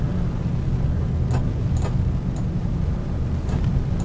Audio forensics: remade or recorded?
recorded